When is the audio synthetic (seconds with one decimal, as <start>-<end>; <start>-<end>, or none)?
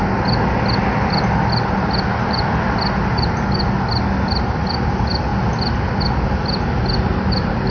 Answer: none